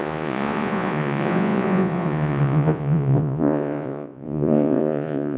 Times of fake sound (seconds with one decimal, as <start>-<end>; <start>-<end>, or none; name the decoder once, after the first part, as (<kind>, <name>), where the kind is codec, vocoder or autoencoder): 0.0-5.4 (vocoder, Vocos)